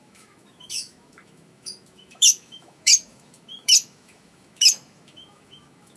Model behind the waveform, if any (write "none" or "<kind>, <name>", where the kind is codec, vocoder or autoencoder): autoencoder, DAC-VAE